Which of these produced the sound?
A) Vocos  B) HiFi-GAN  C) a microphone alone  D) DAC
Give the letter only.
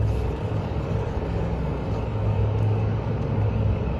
D